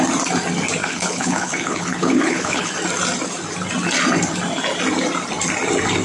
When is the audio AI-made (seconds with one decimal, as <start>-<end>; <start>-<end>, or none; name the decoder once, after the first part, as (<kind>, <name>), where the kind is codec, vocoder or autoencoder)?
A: 0.8-2.7 (codec, HILCodec)